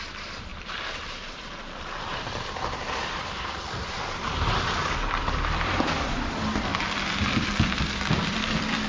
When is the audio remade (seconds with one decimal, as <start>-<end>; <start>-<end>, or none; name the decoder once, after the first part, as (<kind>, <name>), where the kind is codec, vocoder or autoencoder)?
0.0-8.9 (vocoder, BigVGAN v2)